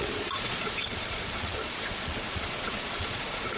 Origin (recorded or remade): remade